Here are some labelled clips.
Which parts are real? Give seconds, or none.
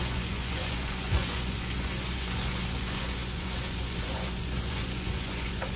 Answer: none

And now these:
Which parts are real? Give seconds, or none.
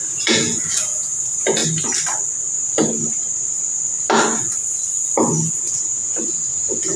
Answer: 1.6-5.5